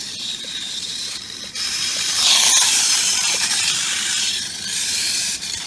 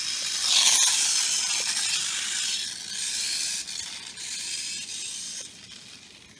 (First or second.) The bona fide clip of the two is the second